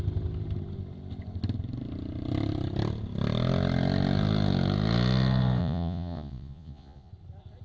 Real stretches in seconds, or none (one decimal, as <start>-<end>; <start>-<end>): 0.0-5.6; 7.1-7.6